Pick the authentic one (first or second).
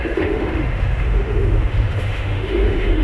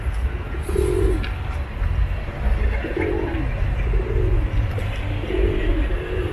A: second